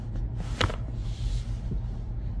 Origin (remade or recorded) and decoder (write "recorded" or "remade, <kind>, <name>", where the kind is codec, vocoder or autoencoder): recorded